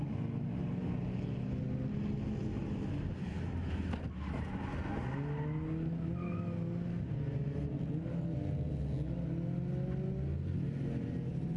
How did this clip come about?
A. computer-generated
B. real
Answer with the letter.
B